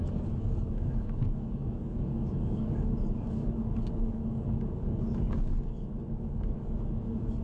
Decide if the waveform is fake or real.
fake